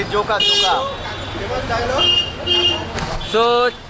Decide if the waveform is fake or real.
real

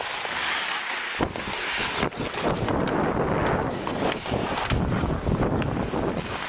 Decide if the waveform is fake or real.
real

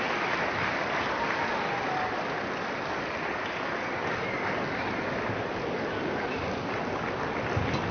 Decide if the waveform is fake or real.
real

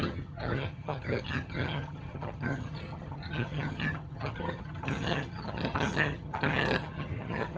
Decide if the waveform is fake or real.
fake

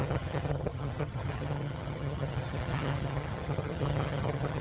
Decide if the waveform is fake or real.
fake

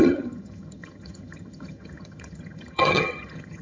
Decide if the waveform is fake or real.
fake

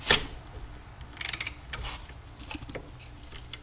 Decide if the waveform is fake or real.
real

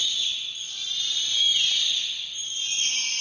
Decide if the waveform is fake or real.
real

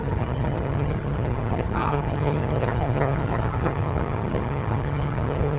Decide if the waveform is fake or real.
fake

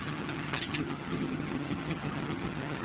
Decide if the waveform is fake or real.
fake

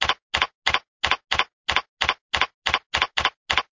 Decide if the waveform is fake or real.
real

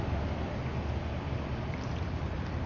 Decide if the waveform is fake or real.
real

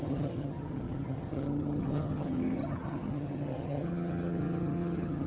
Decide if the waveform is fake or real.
fake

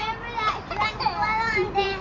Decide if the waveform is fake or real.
real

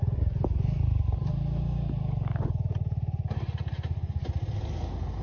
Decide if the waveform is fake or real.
real